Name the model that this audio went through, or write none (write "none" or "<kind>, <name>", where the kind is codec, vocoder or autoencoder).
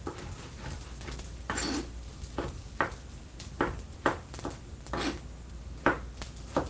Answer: none